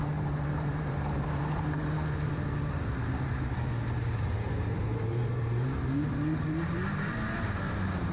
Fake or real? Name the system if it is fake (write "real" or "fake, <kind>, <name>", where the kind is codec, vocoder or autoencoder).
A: fake, vocoder, BigVGAN v2